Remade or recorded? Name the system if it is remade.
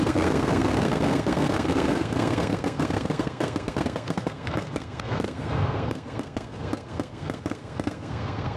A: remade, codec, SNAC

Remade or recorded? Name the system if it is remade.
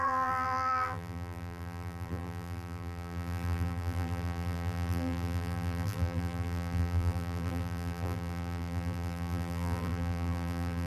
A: remade, vocoder, BigVGAN v2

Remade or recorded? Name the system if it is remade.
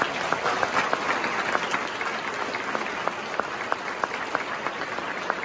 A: recorded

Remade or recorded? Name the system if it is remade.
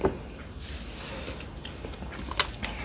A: recorded